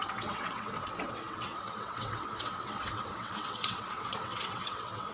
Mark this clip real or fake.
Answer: fake